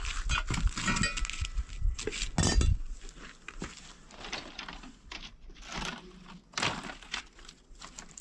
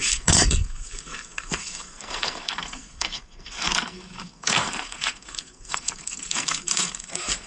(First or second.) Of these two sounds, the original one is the first